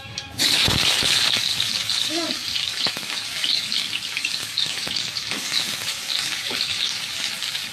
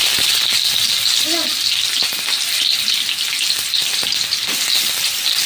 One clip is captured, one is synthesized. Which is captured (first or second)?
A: second